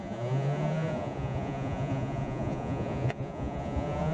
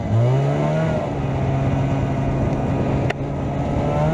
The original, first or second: second